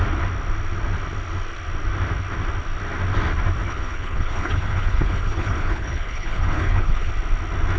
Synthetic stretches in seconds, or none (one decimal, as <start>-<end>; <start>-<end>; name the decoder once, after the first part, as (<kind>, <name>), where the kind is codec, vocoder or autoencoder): 3.7-7.1 (codec, HILCodec)